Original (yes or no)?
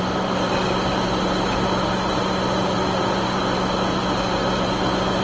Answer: yes